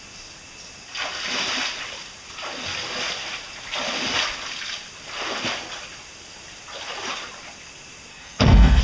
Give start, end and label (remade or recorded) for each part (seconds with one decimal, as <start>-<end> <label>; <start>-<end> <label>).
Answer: 0.0-8.1 recorded; 8.1-8.8 remade